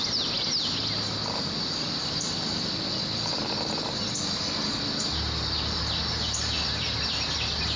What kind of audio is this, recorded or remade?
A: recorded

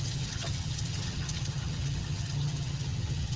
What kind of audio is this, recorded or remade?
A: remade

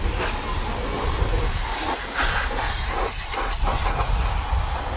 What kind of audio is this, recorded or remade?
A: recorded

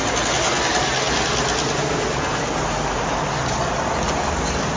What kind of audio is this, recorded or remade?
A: recorded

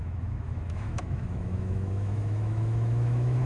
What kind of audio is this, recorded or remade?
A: remade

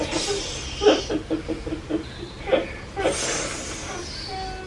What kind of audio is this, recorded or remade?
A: recorded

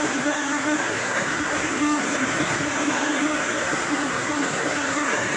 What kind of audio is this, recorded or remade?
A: remade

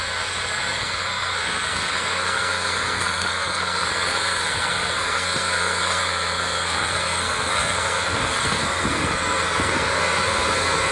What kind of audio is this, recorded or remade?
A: remade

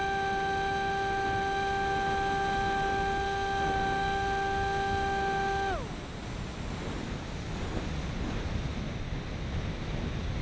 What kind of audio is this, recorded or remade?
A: recorded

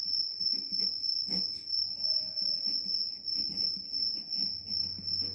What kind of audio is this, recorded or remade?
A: recorded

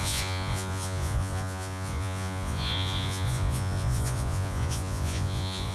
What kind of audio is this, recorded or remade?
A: remade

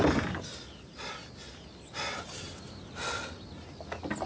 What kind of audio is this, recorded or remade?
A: recorded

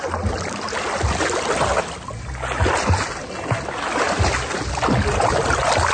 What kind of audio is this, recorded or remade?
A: recorded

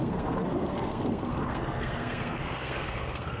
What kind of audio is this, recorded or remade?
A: remade